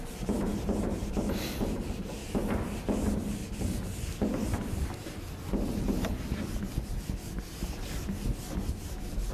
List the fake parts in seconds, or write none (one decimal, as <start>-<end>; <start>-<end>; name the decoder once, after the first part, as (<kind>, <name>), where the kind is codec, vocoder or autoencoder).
0.0-0.5 (vocoder, BigVGAN v2); 1.1-2.2; 2.8-3.4; 8.7-9.3